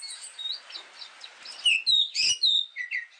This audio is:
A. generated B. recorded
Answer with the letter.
B